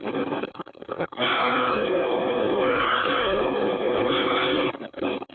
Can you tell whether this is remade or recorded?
remade